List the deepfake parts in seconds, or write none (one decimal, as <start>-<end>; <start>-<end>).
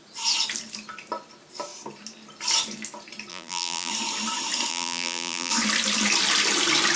3.3-3.9; 4.7-5.5